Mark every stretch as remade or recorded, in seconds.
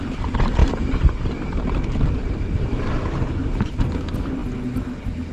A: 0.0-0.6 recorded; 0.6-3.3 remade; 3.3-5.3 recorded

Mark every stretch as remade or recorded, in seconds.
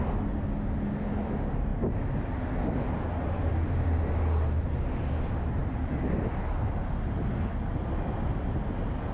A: 0.0-5.6 recorded; 5.6-6.2 remade; 6.2-9.1 recorded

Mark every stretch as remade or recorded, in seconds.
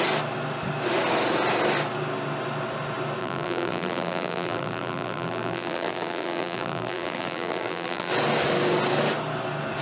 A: 0.0-3.2 recorded; 3.2-8.1 remade; 8.1-9.8 recorded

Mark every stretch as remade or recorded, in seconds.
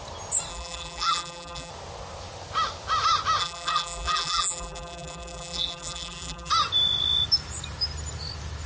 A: 0.0-0.5 recorded; 0.5-1.7 remade; 1.7-3.4 recorded; 3.4-6.5 remade; 6.5-8.7 recorded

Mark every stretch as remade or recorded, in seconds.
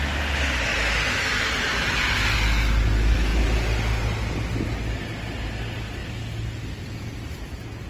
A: 0.0-0.7 recorded; 0.7-2.1 remade; 2.1-7.9 recorded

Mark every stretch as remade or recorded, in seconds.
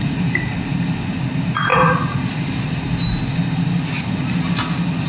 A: 0.0-1.7 remade; 1.7-5.1 recorded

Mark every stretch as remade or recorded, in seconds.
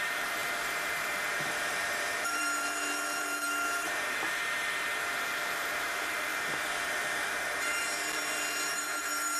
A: 0.0-6.3 remade; 6.3-6.9 recorded; 6.9-9.4 remade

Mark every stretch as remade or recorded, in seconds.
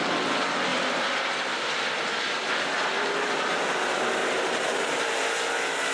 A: 0.0-0.7 recorded; 0.7-3.7 remade; 3.7-4.2 recorded; 4.2-5.0 remade; 5.0-5.9 recorded